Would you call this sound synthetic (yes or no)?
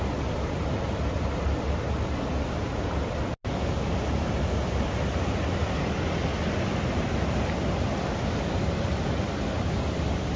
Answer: no